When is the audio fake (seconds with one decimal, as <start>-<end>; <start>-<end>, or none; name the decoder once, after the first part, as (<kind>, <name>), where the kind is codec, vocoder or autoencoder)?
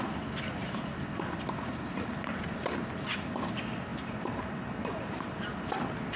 3.9-5.3 (vocoder, BigVGAN v2)